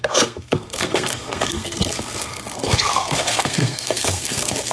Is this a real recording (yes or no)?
no